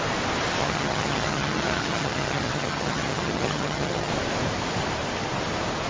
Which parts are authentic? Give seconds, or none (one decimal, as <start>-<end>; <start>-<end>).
0.0-0.6; 4.1-5.9